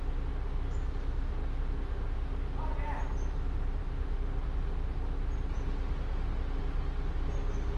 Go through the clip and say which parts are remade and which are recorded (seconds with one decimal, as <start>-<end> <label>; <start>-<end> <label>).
0.0-7.8 recorded